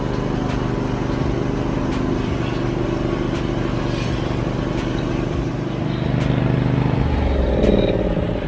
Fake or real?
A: real